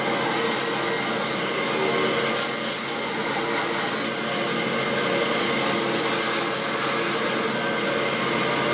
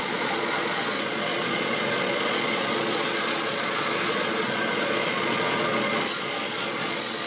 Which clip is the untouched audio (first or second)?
first